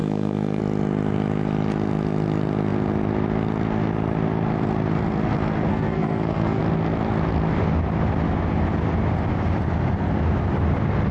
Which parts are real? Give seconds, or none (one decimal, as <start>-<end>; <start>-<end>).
0.6-5.7; 6.6-11.1